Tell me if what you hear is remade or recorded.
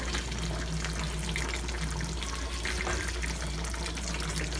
recorded